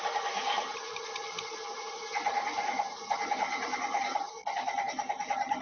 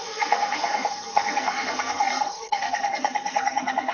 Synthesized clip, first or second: second